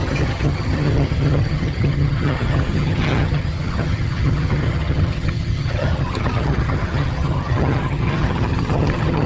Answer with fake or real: fake